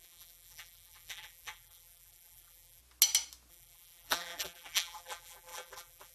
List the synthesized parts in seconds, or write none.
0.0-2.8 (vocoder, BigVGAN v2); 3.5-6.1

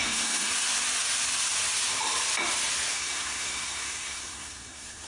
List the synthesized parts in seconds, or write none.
0.0-0.5 (codec, SNAC); 2.9-5.1

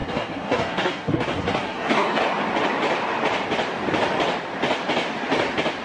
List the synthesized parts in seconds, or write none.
0.0-2.2 (codec, SNAC)

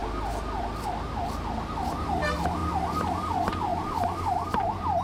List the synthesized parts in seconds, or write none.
3.7-5.0 (vocoder, BigVGAN v2)

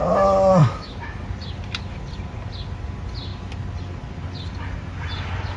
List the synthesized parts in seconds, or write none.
0.6-1.2 (autoencoder, DAC-VAE)

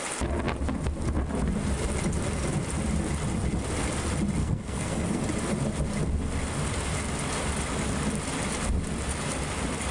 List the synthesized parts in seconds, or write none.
4.4-5.2 (codec, SNAC)

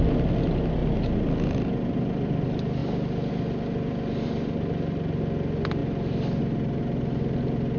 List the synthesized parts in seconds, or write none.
none